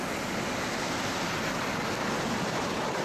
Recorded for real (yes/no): yes